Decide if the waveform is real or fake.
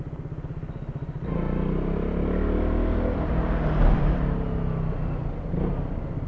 real